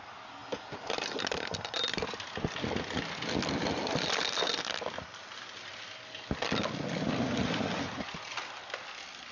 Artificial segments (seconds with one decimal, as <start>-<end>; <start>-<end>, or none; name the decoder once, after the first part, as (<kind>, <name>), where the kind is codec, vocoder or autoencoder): none